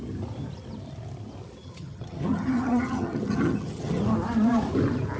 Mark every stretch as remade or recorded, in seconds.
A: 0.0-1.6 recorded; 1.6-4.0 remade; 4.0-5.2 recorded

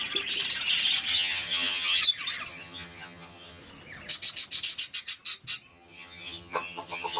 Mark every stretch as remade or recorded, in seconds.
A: 0.0-1.1 recorded; 1.1-2.0 remade; 2.0-2.5 recorded; 2.5-3.6 remade; 3.6-5.7 recorded; 5.7-7.2 remade

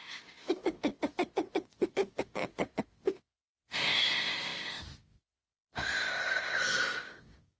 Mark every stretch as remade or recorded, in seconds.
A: 0.0-0.9 remade; 0.9-1.9 recorded; 1.9-2.4 remade; 2.4-7.0 recorded; 7.0-7.6 remade

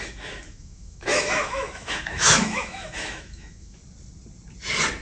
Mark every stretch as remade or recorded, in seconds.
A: 0.0-3.8 remade; 3.8-5.0 recorded

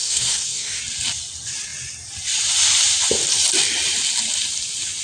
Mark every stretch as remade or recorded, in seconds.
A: 0.0-0.8 remade; 0.8-5.0 recorded

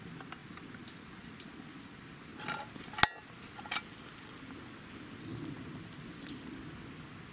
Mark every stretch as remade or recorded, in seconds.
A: 0.0-7.3 recorded